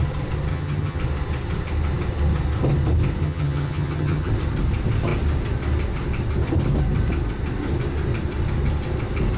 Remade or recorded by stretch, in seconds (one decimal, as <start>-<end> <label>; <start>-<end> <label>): 0.0-0.5 recorded; 0.5-1.0 remade; 1.0-3.2 recorded; 3.2-4.3 remade; 4.3-9.4 recorded